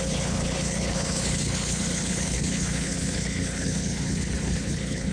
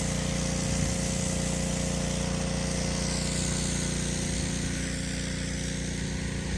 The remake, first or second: first